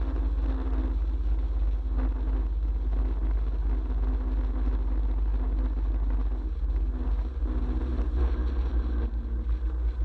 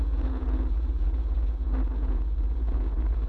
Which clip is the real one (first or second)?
first